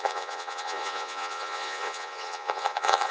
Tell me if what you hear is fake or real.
fake